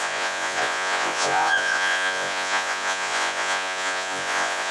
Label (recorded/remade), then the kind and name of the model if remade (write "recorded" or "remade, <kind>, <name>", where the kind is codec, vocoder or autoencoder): remade, vocoder, Vocos